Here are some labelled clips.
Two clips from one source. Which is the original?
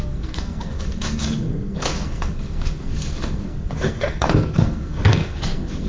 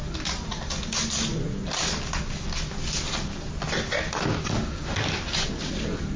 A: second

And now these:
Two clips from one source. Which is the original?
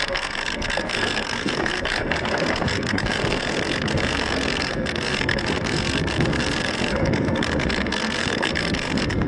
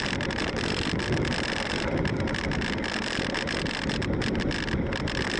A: second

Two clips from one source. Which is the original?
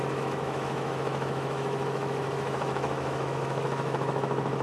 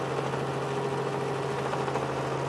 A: second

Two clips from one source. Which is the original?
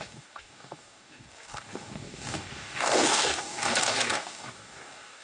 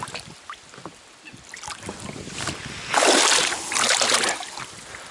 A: second